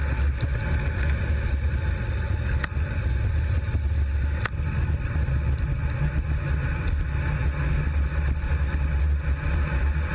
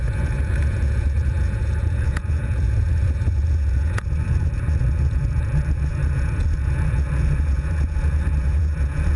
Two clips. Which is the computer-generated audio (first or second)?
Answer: second